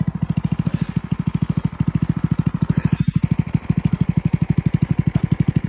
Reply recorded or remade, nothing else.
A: recorded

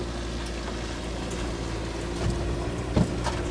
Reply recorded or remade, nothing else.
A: recorded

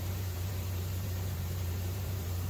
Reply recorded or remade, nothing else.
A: remade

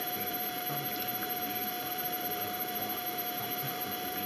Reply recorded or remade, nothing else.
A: remade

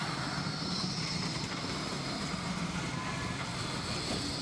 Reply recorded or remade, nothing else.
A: recorded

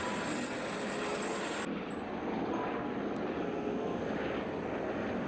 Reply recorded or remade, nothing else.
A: recorded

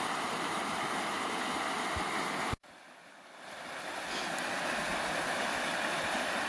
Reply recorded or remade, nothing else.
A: recorded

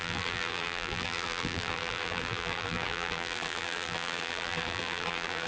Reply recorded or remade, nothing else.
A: remade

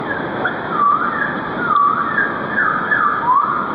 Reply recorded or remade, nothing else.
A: recorded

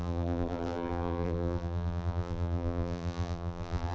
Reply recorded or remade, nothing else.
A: remade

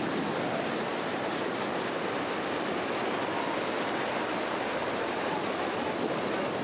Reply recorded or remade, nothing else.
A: recorded